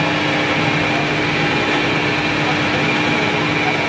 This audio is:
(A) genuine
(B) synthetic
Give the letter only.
A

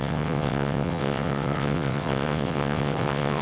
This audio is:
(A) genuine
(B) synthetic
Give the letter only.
B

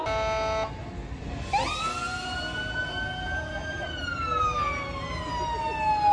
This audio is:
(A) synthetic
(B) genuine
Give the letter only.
B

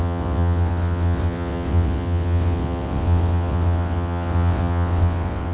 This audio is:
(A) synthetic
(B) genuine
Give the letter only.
A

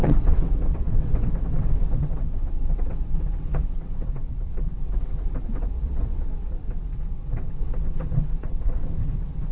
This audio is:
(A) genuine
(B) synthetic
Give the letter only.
B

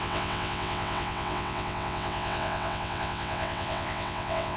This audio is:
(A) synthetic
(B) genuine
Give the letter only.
A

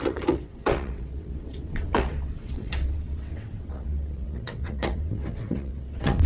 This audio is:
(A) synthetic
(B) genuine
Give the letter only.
A